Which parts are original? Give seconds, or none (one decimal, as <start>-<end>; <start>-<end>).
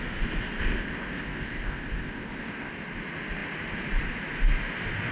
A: 0.0-0.6; 2.7-5.1